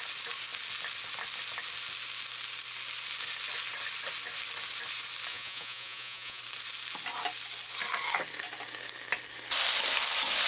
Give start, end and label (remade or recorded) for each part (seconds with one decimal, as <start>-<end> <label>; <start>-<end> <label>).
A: 0.0-5.3 recorded; 5.3-6.4 remade; 6.4-10.5 recorded